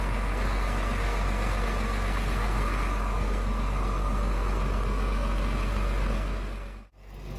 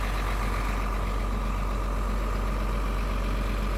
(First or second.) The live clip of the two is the second